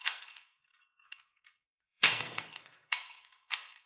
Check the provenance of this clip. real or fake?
fake